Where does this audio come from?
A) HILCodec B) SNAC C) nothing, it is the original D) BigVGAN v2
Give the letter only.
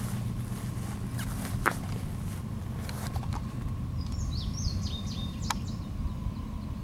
C